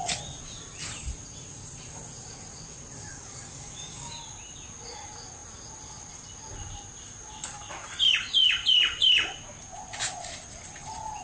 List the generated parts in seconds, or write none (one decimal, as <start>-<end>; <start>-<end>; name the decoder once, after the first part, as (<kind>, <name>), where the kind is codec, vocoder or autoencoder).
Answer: 3.1-4.1 (codec, DAC)